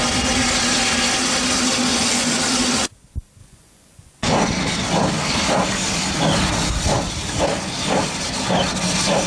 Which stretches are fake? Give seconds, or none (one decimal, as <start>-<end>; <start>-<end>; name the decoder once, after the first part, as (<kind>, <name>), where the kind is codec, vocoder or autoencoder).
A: 1.9-2.4 (vocoder, Vocos); 3.4-4.3